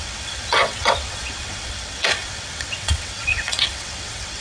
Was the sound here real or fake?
fake